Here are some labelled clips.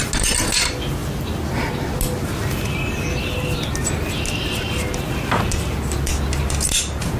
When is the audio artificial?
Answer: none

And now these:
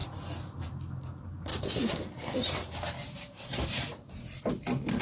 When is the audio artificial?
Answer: 0.0-0.7 (vocoder, BigVGAN v2); 1.5-4.5

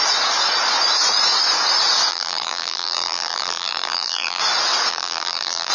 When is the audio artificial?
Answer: 2.1-4.4 (vocoder, BigVGAN v2); 4.9-5.7

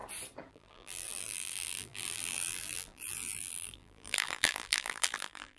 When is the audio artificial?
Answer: 0.5-5.6 (vocoder, BigVGAN v2)